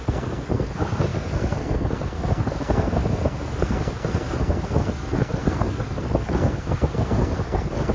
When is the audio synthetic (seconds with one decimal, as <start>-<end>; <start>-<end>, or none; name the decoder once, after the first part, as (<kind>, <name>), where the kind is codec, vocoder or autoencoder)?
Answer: 0.0-7.9 (codec, SNAC)